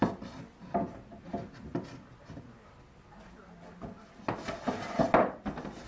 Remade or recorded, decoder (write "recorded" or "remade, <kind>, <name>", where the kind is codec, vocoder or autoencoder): recorded